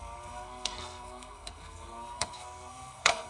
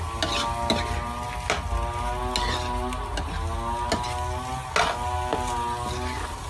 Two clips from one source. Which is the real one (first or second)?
second